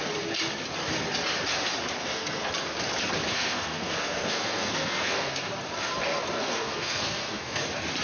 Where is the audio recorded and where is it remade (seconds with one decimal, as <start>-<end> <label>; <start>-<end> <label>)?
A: 0.0-2.0 recorded; 2.0-2.5 remade; 2.5-3.3 recorded; 3.3-5.5 remade; 5.5-6.4 recorded; 6.4-7.6 remade; 7.6-8.0 recorded

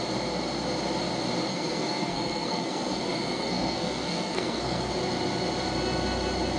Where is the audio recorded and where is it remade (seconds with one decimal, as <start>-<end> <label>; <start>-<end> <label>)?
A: 0.0-1.5 recorded; 1.5-4.9 remade; 4.9-6.6 recorded

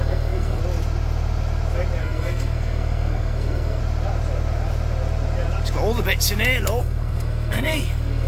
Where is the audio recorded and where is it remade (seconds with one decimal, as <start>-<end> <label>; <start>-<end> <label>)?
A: 0.0-0.6 remade; 0.6-2.0 recorded; 2.0-3.8 remade; 3.8-6.8 recorded; 6.8-8.3 remade

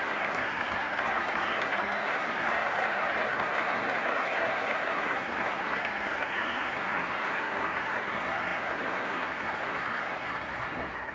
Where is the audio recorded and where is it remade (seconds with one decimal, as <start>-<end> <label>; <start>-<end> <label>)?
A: 0.0-11.1 remade

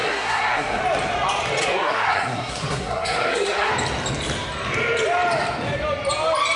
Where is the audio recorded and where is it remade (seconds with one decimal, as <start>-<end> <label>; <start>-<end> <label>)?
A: 0.0-0.8 remade; 0.8-1.6 recorded; 1.6-3.7 remade; 3.7-6.6 recorded

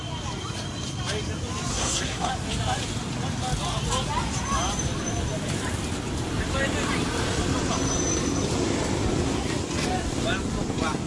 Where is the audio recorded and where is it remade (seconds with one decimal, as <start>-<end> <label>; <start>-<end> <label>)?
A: 0.0-1.7 recorded; 1.7-2.3 remade; 2.3-11.1 recorded

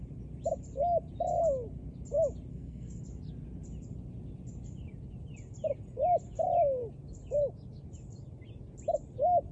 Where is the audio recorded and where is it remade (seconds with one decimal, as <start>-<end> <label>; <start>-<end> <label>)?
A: 0.0-2.5 recorded; 2.5-3.0 remade; 3.0-9.5 recorded